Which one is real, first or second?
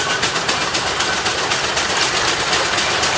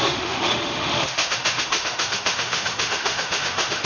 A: first